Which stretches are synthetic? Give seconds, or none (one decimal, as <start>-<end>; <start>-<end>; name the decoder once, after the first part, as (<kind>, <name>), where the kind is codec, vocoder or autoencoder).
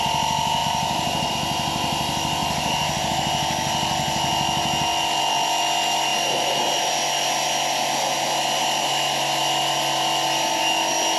0.6-1.3 (vocoder, BigVGAN v2)